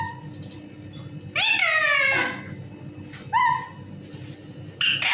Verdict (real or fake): real